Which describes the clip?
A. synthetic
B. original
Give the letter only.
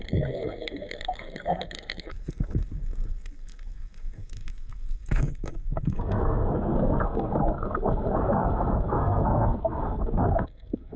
A